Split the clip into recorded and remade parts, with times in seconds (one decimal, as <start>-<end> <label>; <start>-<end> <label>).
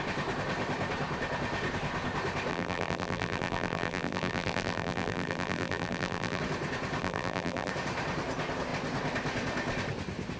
0.0-2.5 recorded; 2.5-6.4 remade; 6.4-7.0 recorded; 7.0-7.7 remade; 7.7-10.4 recorded